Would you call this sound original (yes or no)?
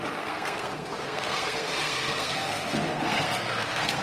no